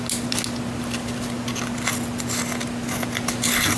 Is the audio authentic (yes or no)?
yes